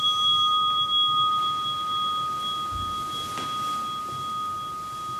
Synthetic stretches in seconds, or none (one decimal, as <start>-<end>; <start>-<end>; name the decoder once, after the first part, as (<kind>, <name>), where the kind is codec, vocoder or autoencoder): none